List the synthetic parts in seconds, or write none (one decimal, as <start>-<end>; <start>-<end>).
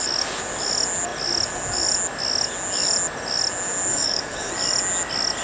3.9-4.5